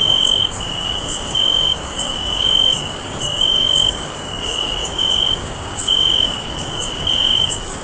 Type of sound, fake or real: fake